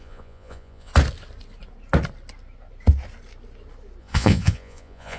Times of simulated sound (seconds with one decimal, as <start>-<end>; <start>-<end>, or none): 0.0-0.9; 4.0-5.2

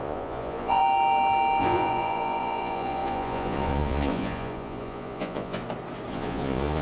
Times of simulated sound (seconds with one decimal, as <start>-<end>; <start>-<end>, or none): 0.0-0.8; 1.6-5.6; 6.1-6.8

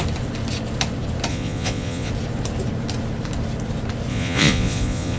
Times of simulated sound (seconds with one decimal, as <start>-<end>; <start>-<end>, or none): 1.3-2.1; 4.1-5.2

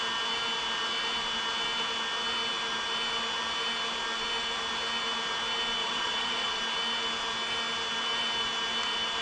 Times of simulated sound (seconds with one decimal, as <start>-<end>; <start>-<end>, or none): 5.8-6.6

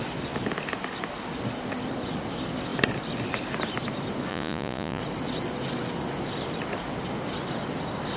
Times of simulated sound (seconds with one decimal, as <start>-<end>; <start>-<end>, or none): 4.3-5.0

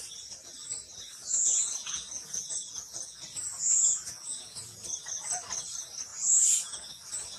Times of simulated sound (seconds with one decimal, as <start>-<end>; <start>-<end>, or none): 1.2-4.8; 6.1-6.9

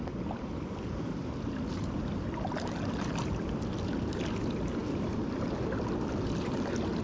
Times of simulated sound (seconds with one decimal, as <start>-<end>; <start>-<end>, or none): none

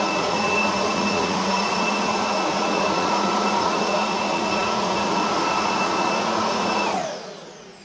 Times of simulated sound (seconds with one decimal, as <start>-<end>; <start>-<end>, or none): 0.0-7.8